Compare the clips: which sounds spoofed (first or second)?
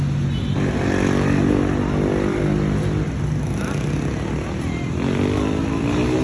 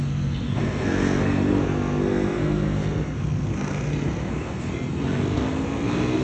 second